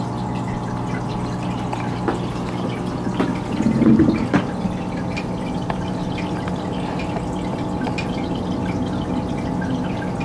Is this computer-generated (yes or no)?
no